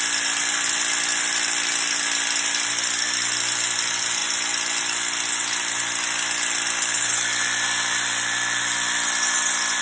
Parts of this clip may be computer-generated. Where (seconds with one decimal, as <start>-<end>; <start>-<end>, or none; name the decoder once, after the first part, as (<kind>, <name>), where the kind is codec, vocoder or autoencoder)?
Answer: none